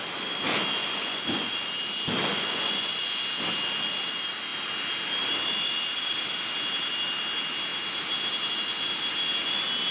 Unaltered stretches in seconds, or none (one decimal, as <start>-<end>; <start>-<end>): 0.0-0.8; 1.5-2.3; 3.0-9.9